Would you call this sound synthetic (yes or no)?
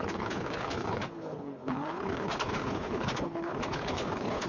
yes